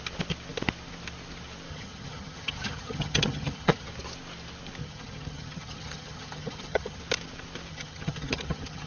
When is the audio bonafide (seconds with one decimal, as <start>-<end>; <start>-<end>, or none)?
0.0-1.7; 3.9-4.8; 7.0-7.7